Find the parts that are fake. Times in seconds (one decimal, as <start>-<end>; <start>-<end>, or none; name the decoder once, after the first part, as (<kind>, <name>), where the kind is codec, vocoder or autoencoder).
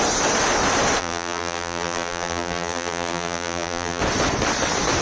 1.0-4.0 (vocoder, BigVGAN v2)